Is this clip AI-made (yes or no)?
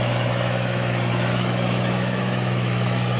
yes